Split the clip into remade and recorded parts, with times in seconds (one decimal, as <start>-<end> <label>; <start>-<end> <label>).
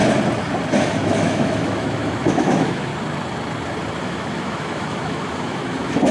0.0-1.0 recorded; 1.0-2.9 remade; 2.9-4.0 recorded; 4.0-6.1 remade